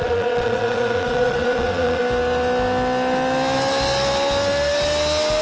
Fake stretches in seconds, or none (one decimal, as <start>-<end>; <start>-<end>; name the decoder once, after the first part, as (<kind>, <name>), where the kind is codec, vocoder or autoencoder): 0.0-2.0 (vocoder, Vocos)